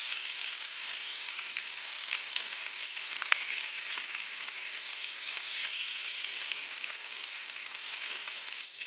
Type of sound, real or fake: fake